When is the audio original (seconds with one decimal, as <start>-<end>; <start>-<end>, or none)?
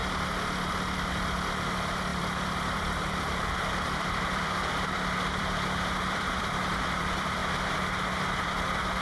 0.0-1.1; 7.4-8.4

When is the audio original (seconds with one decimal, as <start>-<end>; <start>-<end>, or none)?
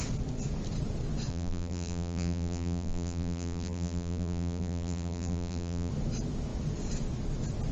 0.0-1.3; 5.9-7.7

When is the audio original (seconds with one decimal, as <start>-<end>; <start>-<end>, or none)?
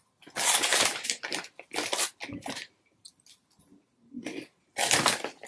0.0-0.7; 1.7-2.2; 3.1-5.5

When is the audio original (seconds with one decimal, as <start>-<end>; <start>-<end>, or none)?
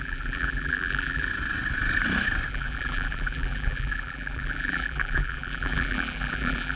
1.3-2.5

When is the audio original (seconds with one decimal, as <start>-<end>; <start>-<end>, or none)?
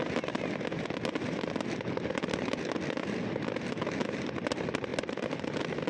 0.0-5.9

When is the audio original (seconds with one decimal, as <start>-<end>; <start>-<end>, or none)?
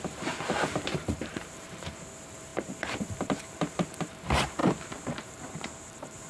none